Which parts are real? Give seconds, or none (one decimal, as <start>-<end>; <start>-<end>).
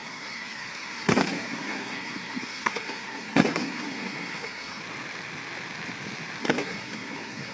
4.8-6.4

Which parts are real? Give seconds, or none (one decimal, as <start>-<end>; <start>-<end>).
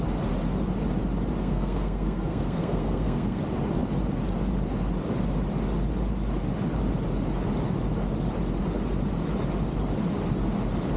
0.0-1.4; 3.4-11.0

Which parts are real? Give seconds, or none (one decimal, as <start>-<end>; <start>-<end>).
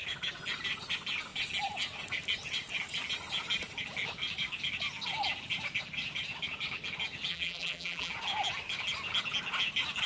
0.0-7.3; 8.1-10.1